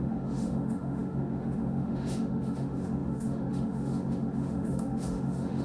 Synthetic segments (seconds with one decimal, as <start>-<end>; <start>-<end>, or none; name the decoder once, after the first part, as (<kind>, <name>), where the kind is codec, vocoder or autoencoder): 0.0-5.6 (autoencoder, DAC-VAE)